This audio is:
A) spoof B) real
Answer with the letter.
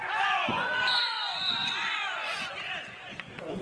A